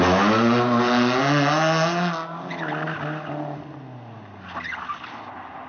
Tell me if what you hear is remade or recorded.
recorded